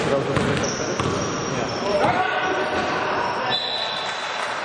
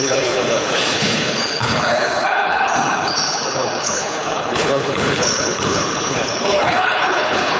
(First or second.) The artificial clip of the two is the second